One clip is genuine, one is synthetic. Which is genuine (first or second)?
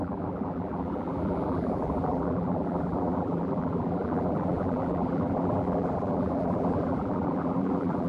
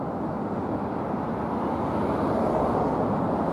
second